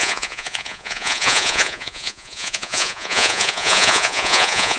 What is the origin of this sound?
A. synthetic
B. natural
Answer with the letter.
A